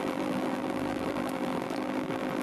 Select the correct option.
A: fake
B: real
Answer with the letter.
A